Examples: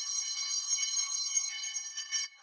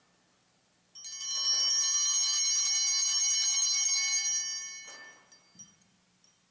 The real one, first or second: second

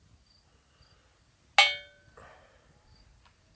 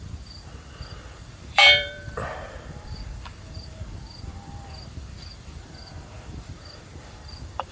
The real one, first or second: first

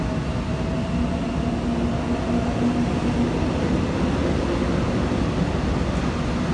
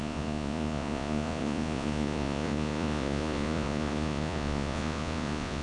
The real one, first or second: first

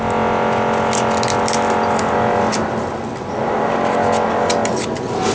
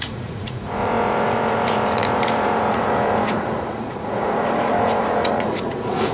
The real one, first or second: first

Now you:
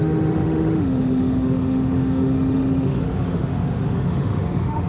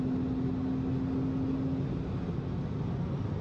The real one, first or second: second